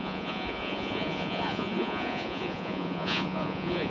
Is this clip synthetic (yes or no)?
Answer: yes